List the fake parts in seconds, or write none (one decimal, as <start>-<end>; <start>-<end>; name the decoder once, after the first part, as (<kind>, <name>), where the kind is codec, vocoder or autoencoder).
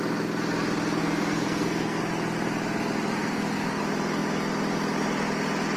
1.0-2.0 (codec, SNAC); 3.2-3.8